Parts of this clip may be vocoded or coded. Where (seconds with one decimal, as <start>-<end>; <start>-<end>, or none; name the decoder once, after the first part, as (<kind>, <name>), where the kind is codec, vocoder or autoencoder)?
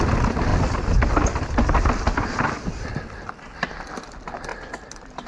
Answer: none